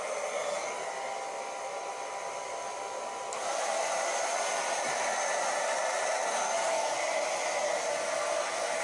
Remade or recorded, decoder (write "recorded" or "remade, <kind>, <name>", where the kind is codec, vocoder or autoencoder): recorded